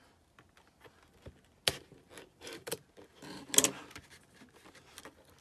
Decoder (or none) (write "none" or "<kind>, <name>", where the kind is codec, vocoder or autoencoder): none